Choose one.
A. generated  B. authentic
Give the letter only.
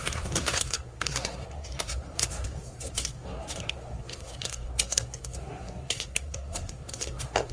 A